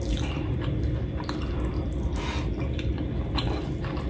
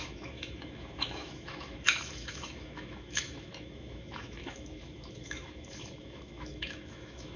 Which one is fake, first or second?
second